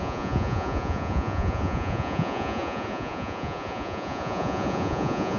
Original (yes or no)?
no